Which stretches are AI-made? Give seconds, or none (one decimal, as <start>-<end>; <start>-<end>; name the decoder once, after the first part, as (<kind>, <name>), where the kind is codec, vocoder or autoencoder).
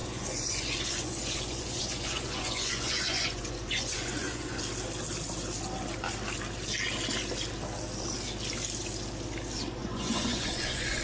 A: 0.0-4.6 (vocoder, Vocos); 9.8-11.0